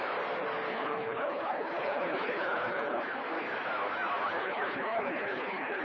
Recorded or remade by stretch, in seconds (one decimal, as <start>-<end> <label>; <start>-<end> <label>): 0.0-0.7 recorded; 0.7-3.0 remade; 3.0-4.4 recorded; 4.4-5.8 remade